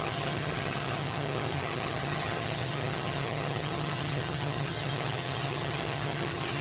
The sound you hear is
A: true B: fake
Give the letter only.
B